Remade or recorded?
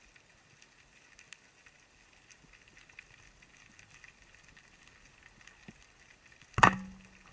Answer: recorded